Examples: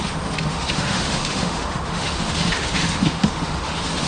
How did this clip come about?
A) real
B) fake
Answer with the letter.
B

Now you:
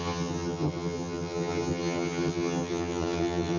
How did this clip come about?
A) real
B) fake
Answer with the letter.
B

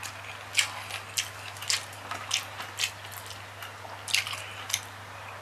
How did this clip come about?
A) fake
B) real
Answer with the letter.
B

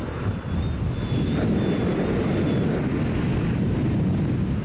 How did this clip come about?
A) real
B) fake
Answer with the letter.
A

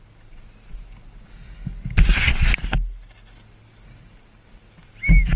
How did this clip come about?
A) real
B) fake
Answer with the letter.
A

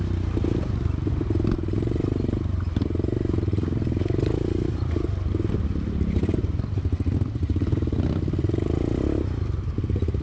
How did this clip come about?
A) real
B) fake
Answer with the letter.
A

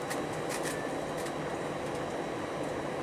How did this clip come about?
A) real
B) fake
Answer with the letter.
A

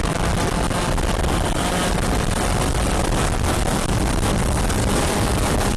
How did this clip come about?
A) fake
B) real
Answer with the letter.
B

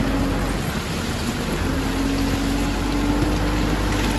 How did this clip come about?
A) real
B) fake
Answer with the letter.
A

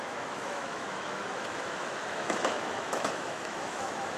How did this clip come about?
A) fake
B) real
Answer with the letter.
A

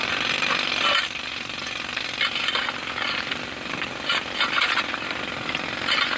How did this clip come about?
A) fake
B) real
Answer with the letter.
B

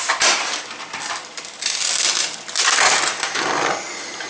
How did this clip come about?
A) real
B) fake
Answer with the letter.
A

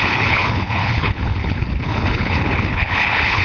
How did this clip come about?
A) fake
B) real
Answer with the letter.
A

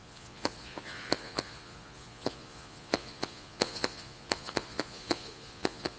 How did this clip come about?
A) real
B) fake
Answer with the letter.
B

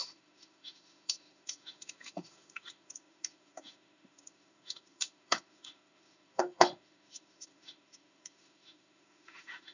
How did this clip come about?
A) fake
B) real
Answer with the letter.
A